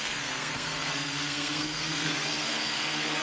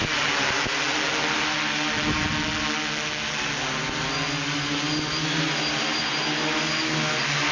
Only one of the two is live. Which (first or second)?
second